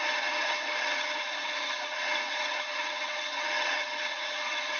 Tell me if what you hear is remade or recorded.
remade